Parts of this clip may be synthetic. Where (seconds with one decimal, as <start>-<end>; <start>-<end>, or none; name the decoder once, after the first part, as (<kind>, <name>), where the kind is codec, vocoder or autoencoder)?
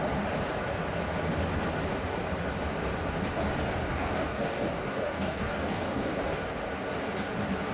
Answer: 3.9-6.2 (codec, DAC)